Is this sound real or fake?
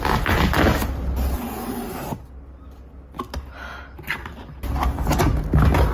real